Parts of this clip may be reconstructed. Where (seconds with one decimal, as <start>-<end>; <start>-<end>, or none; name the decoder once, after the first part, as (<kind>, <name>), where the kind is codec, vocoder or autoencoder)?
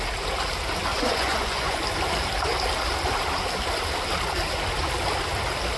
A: 0.9-1.8 (vocoder, Vocos)